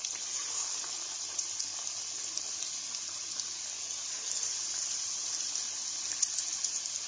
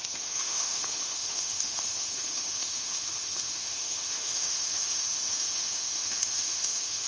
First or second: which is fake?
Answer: second